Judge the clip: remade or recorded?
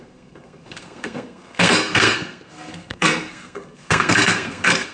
remade